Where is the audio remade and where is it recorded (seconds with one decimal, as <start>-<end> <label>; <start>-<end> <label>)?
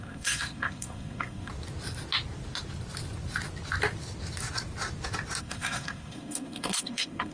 0.0-1.5 remade; 1.5-5.4 recorded; 5.4-7.3 remade